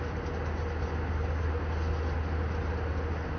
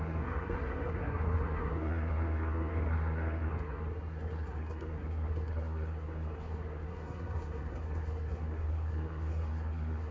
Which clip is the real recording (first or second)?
first